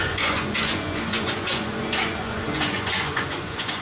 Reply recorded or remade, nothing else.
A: remade